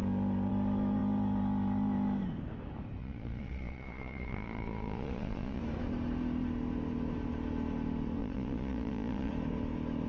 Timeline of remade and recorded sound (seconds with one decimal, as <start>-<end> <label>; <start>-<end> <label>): 0.0-3.0 recorded; 3.0-5.6 remade; 5.6-8.2 recorded; 8.2-9.3 remade; 9.3-10.1 recorded